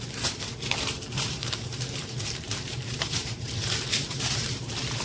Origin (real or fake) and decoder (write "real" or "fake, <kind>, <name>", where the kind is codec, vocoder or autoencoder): fake, vocoder, BigVGAN v2